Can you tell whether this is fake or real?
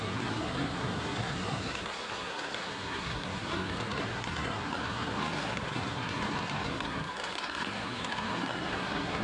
fake